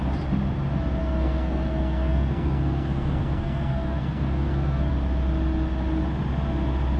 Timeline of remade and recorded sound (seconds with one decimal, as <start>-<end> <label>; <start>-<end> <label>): 0.0-1.0 recorded; 1.0-4.9 remade; 4.9-7.0 recorded